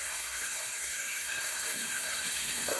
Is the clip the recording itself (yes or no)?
no